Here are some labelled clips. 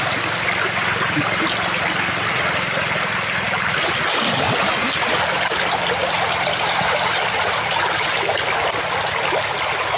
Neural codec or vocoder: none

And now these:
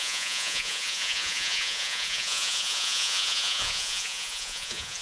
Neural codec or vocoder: vocoder, Vocos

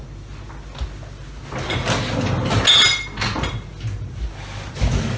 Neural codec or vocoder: none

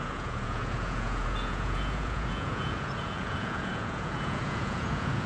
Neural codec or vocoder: vocoder, Vocos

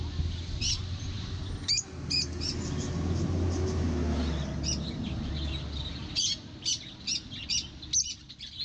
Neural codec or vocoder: none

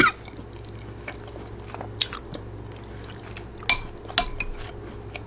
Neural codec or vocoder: none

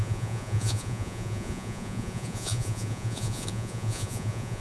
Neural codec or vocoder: vocoder, Vocos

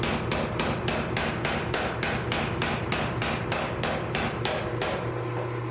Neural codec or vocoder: none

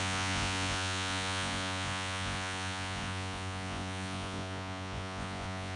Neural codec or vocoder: vocoder, Vocos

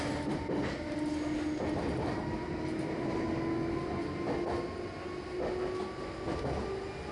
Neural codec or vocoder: none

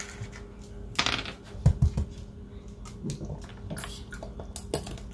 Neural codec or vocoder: none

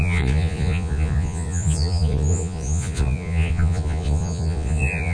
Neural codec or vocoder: vocoder, Vocos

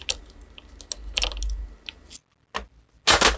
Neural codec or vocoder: none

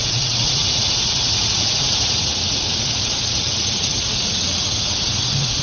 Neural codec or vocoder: vocoder, Vocos